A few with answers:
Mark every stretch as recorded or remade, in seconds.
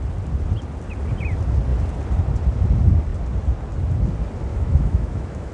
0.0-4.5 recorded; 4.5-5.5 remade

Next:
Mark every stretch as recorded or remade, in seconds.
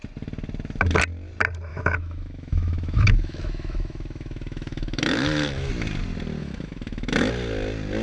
0.0-1.7 recorded; 1.7-5.7 remade; 5.7-6.4 recorded; 6.4-7.3 remade; 7.3-8.0 recorded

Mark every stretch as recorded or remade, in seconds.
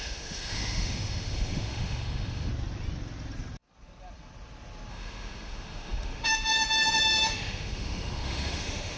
0.0-2.5 remade; 2.5-4.9 recorded; 4.9-9.0 remade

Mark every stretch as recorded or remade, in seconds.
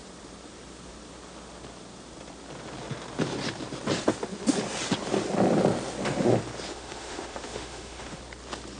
0.0-6.7 recorded; 6.7-8.2 remade; 8.2-8.8 recorded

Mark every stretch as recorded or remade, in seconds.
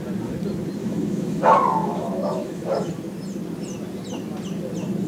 0.0-0.8 recorded; 0.8-1.4 remade; 1.4-1.8 recorded; 1.8-2.9 remade; 2.9-5.1 recorded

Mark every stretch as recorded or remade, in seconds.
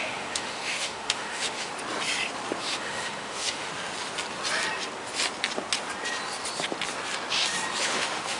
0.0-1.7 remade; 1.7-2.6 recorded; 2.6-3.7 remade; 3.7-7.8 recorded; 7.8-8.4 remade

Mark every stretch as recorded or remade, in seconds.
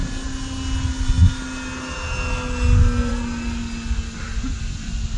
0.0-5.2 recorded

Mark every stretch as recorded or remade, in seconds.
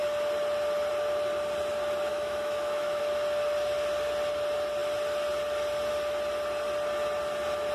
0.0-2.1 recorded; 2.1-3.0 remade; 3.0-7.7 recorded